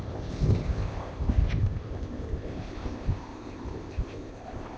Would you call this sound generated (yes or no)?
yes